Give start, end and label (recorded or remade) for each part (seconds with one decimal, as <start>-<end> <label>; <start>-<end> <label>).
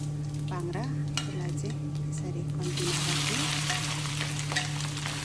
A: 0.0-1.0 recorded; 1.0-4.1 remade; 4.1-5.2 recorded